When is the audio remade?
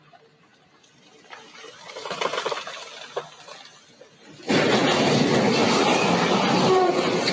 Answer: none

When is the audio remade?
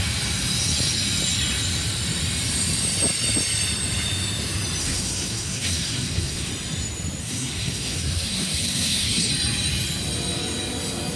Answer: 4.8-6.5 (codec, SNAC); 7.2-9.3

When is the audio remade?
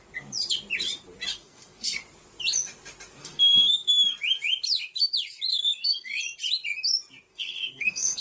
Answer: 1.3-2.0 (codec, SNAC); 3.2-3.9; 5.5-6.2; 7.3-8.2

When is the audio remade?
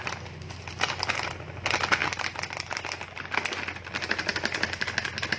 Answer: none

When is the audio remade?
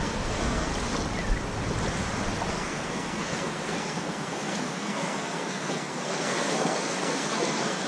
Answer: 0.0-0.7 (codec, SNAC); 2.5-7.9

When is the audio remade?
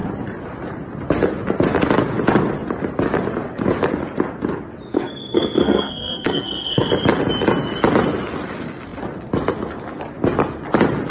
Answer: 4.9-6.9 (codec, SNAC)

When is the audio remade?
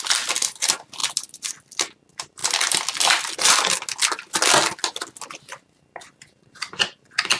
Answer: none